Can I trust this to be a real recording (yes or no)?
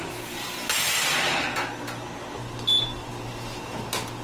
yes